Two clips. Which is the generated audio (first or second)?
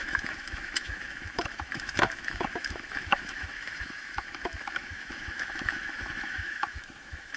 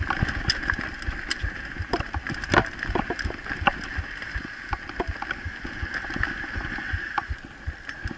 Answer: first